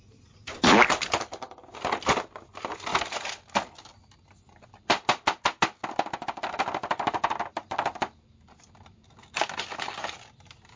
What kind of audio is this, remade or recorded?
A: recorded